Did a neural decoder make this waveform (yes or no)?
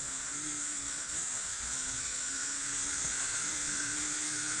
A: yes